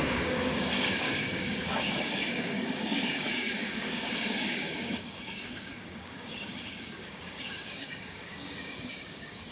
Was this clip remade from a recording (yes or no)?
yes